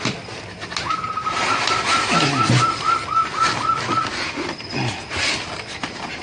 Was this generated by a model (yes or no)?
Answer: no